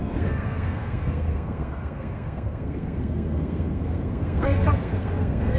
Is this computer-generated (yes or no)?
yes